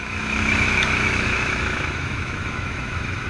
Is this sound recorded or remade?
remade